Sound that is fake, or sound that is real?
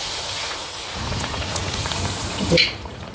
fake